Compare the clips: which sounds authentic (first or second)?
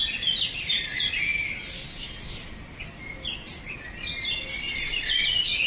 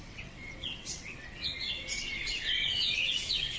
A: first